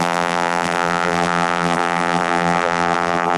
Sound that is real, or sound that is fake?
fake